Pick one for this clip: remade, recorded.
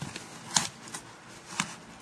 recorded